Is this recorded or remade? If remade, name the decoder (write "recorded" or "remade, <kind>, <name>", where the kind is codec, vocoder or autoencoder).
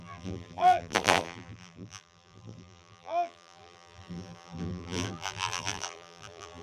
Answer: remade, vocoder, BigVGAN v2